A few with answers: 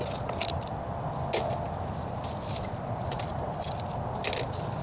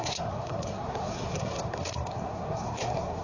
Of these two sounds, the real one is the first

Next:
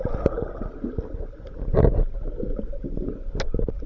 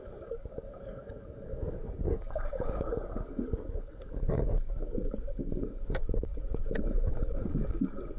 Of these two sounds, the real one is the first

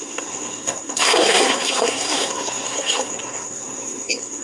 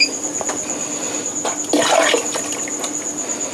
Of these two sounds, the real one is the second